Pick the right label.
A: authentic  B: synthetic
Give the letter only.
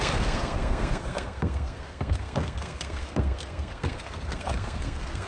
B